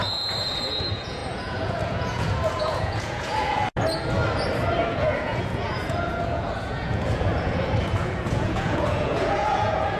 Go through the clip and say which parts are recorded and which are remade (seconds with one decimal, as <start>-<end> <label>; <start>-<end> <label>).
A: 0.0-3.6 remade; 3.6-4.9 recorded; 4.9-10.0 remade